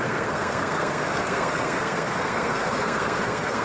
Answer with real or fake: fake